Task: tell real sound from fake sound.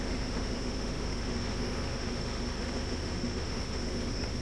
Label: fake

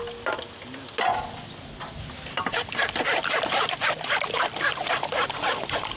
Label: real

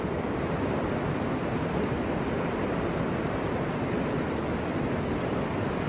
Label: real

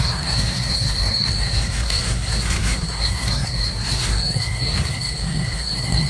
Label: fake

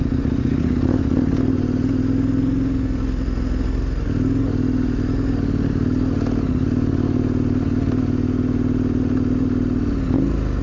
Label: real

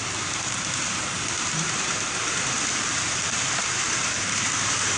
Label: fake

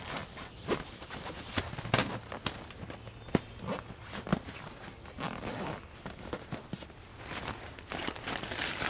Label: real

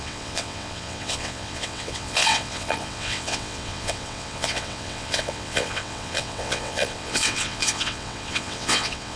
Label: fake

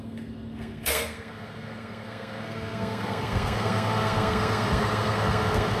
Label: fake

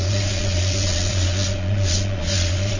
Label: fake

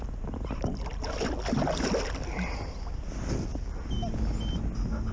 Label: real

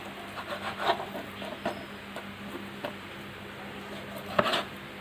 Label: real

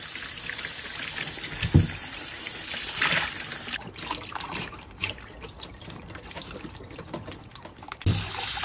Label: fake